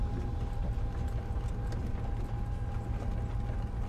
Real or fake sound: real